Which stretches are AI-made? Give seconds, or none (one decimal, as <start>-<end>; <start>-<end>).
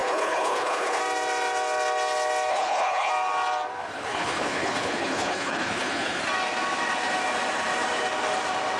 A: 0.0-1.0; 2.5-3.1; 3.9-6.2